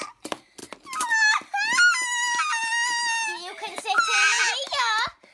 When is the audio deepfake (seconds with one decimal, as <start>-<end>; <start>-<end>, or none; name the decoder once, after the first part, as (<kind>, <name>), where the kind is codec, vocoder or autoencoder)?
none